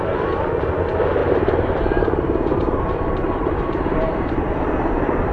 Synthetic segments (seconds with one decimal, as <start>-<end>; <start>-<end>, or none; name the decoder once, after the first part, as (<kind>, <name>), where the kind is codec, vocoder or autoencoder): 1.2-4.4 (vocoder, BigVGAN v2)